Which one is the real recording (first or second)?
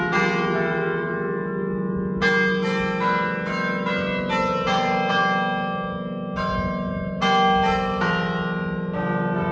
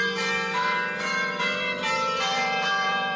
first